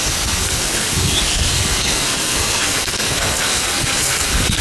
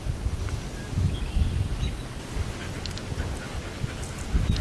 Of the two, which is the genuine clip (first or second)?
second